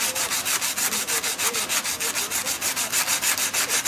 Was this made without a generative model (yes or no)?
yes